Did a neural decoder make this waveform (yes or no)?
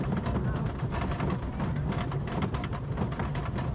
no